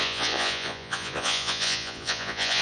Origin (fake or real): fake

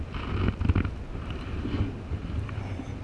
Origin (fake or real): real